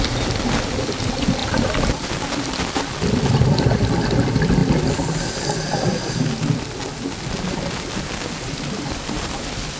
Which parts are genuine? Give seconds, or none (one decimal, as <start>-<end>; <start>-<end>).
0.0-1.4; 3.3-9.8

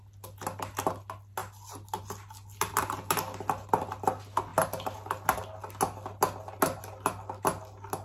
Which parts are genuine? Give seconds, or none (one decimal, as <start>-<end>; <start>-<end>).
0.0-8.0

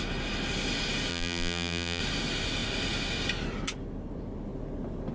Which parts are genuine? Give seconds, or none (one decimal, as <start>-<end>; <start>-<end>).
0.0-1.1; 2.0-5.1

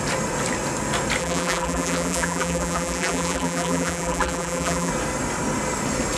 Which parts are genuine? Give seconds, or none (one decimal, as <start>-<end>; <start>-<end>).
0.0-1.2; 4.9-6.2